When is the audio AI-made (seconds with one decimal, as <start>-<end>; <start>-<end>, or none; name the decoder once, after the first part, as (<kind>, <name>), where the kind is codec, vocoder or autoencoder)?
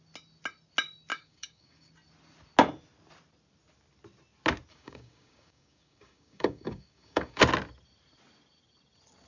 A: 1.1-1.9 (codec, DAC); 4.7-7.4